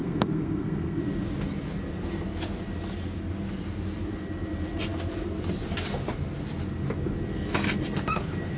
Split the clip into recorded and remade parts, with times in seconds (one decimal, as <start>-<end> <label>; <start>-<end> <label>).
0.0-1.0 remade; 1.0-8.6 recorded